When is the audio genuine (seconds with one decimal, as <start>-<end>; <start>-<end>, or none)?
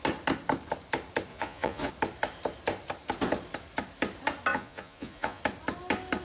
0.0-1.3; 1.9-4.5; 5.4-6.2